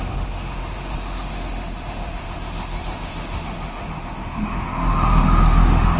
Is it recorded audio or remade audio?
remade